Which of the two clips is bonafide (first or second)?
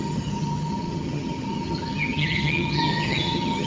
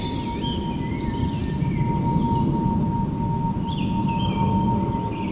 second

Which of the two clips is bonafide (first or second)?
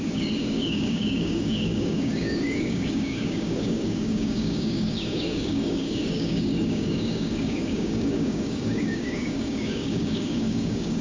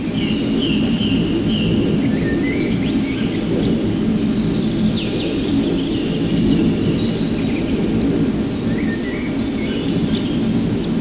second